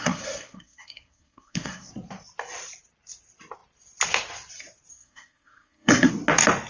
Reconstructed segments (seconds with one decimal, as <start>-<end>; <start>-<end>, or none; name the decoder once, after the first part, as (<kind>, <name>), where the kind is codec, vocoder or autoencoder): 0.0-1.9 (codec, SNAC); 4.9-6.1